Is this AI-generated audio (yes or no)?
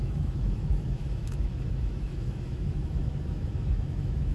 yes